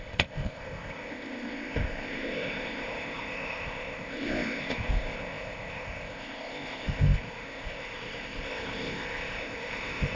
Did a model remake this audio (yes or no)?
yes